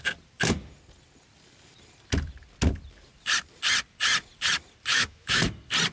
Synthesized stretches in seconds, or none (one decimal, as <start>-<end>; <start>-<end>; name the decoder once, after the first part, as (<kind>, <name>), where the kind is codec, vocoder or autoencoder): 4.9-5.4 (autoencoder, DAC-VAE)